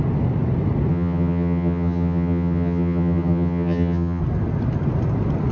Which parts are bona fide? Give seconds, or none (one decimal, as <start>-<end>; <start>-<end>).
0.0-0.9; 4.2-5.5